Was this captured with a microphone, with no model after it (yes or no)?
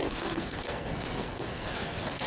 no